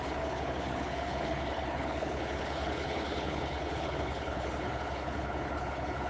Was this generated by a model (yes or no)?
yes